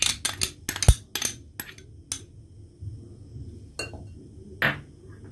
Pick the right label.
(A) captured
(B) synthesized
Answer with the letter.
A